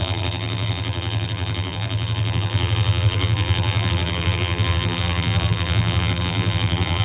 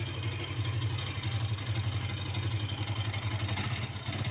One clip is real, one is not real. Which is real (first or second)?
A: second